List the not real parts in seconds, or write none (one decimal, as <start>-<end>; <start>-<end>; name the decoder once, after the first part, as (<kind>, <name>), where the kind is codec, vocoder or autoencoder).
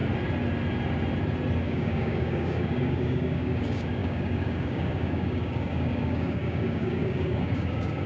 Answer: 1.6-8.1 (codec, DAC)